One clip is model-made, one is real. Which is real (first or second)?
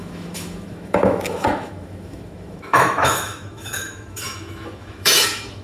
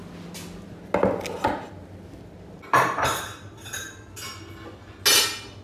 second